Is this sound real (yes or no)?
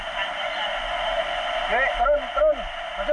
yes